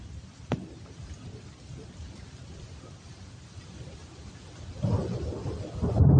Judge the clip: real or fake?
real